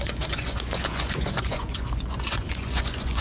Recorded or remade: remade